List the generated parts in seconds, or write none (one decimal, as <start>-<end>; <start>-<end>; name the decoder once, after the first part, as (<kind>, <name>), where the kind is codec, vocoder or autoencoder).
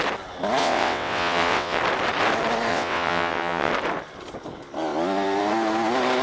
0.6-1.8 (vocoder, WaveNeXt); 2.7-3.7